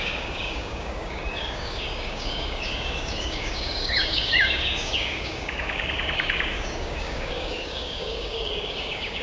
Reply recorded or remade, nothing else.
remade